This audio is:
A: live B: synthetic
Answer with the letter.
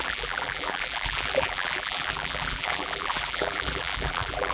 B